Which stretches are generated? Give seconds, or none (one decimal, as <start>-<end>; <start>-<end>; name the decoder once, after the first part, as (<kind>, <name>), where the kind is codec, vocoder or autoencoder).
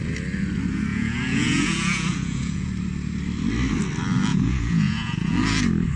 0.9-2.7 (vocoder, Vocos); 4.3-5.3